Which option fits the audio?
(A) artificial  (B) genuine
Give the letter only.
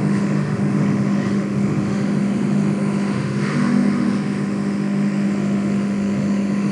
A